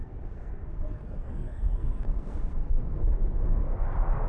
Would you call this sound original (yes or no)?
no